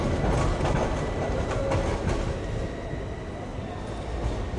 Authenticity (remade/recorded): recorded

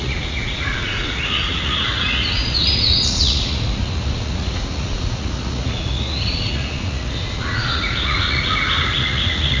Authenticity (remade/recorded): remade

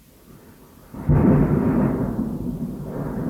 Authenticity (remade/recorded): recorded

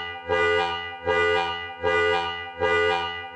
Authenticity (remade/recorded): remade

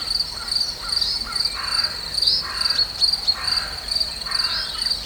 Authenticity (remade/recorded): recorded